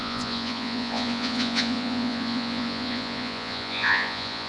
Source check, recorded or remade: remade